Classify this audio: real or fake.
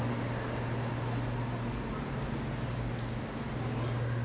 real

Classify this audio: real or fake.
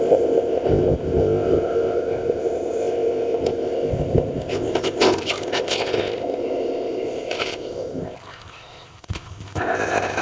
fake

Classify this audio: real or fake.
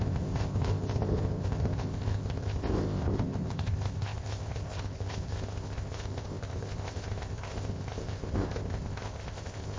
fake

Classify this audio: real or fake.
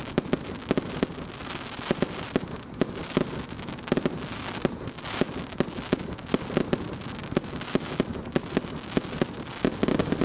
real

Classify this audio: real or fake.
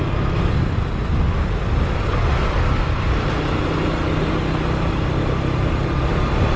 real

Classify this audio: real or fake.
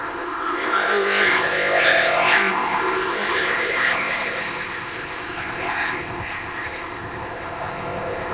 fake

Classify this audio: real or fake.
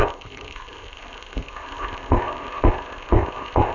fake